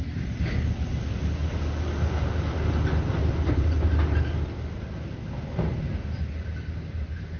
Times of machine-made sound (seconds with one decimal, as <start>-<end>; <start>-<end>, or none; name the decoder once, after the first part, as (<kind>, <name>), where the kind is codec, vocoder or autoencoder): 3.2-3.9 (vocoder, BigVGAN v2)